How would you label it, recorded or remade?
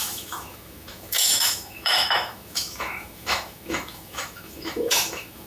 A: remade